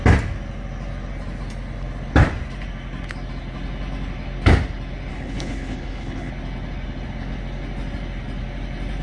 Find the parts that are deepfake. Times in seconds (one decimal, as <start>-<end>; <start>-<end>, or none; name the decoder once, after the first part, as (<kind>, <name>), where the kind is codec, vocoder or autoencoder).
5.1-6.3 (codec, HILCodec)